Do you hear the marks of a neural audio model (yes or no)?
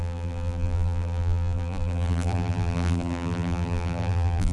yes